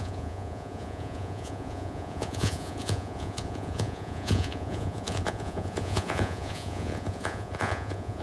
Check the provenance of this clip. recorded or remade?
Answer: remade